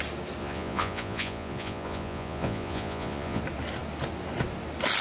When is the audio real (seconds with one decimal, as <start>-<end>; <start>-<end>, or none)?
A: 0.0-0.4; 3.4-5.0